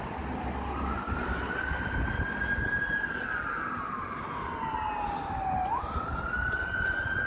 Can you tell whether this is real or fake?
real